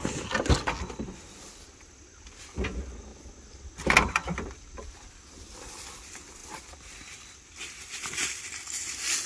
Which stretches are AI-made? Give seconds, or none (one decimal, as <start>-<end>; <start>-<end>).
none